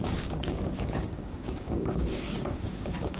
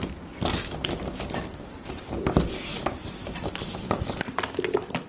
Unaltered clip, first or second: second